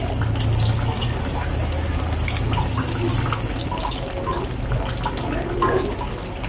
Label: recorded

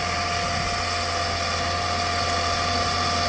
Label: recorded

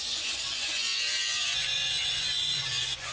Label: remade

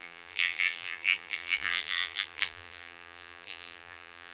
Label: remade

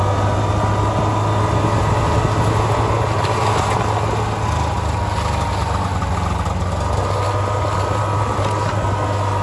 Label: recorded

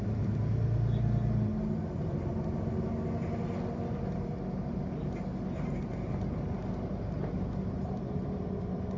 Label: recorded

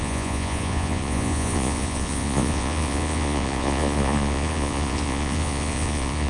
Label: remade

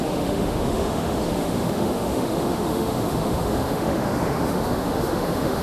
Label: remade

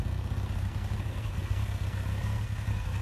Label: remade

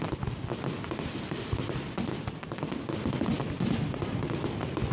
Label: recorded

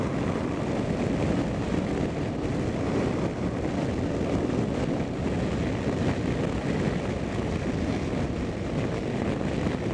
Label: recorded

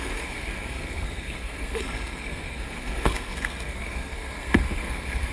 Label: remade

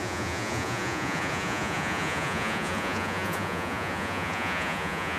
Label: remade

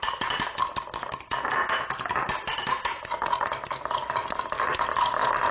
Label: recorded